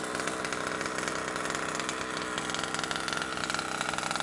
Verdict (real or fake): real